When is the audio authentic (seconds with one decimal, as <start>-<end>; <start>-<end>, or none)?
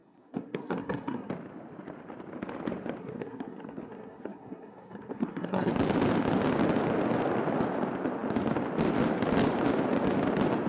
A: 1.3-3.0; 5.7-10.7